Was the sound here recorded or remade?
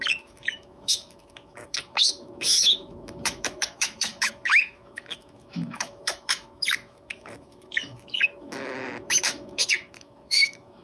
remade